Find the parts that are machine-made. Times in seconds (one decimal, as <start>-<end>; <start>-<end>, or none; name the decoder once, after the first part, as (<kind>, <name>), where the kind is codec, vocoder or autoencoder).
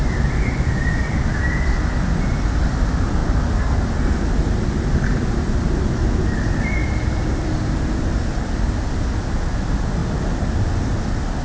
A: none